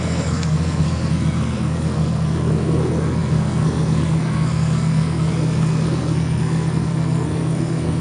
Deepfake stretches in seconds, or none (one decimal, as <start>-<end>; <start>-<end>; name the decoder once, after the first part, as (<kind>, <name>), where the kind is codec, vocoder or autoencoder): 0.0-8.0 (codec, SNAC)